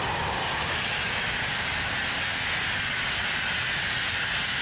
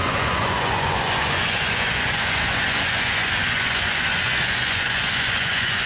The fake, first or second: second